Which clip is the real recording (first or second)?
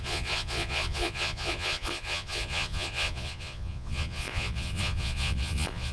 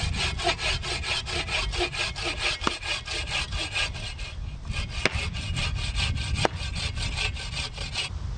second